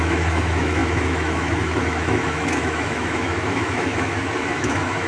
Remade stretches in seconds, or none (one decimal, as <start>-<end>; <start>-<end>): 0.0-5.1